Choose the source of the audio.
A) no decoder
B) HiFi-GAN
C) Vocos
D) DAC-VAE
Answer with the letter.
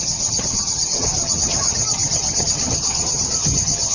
B